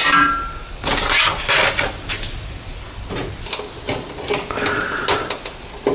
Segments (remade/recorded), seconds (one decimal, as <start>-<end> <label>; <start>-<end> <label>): 0.0-5.9 recorded